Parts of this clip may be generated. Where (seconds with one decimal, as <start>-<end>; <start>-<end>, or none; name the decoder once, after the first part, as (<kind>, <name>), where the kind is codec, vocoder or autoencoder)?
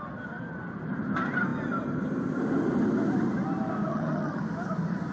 3.9-4.4 (vocoder, HiFi-GAN)